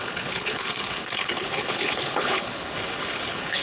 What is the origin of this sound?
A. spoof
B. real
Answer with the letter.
A